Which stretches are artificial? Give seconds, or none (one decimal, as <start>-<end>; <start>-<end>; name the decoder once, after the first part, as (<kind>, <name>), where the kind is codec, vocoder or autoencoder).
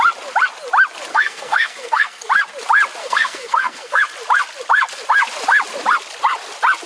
1.1-2.3 (codec, SNAC); 3.0-4.0